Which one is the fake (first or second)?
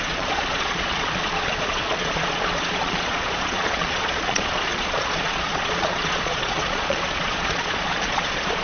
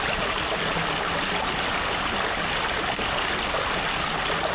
first